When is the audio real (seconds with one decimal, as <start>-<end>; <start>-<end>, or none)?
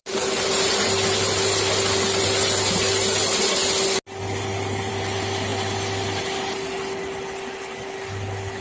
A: 0.0-8.6